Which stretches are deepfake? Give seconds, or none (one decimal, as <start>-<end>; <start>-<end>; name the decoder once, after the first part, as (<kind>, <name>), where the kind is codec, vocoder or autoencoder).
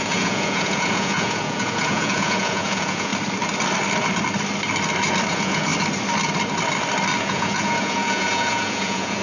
0.0-3.1 (vocoder, Vocos); 5.3-5.7; 7.2-9.2